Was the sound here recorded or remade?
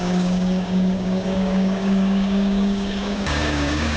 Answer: remade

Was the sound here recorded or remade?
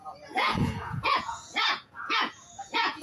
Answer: remade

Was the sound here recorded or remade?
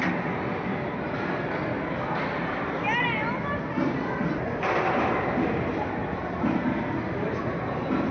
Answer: recorded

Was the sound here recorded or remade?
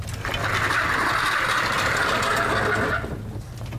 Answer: recorded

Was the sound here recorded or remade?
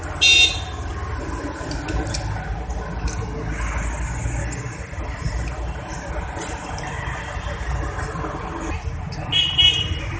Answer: recorded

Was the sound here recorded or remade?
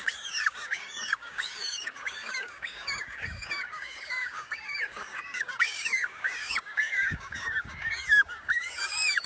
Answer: remade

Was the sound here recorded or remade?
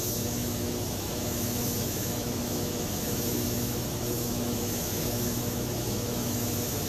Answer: remade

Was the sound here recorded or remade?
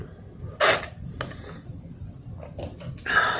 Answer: recorded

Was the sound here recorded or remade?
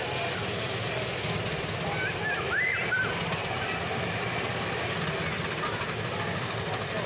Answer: recorded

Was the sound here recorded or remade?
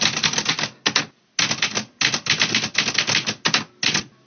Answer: recorded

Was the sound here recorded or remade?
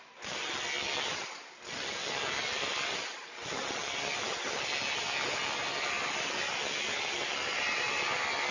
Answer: recorded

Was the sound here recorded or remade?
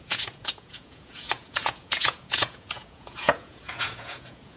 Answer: remade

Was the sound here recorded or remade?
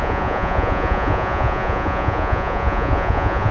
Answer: remade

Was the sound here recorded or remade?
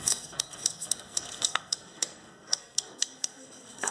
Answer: remade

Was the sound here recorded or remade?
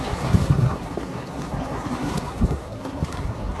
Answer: remade